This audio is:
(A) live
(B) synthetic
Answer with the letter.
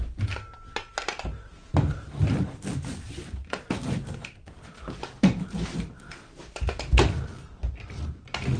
A